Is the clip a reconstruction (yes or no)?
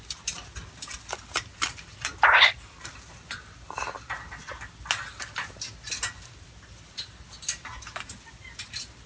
no